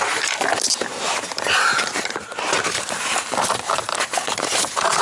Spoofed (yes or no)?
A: yes